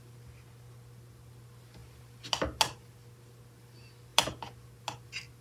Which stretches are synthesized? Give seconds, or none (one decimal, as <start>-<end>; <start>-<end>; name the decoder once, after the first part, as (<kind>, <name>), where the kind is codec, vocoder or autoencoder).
none